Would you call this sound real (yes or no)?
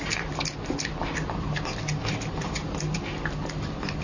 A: yes